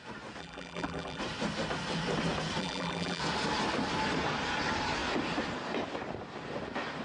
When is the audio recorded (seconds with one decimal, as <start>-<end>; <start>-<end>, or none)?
0.0-0.4; 1.2-2.6; 3.2-7.0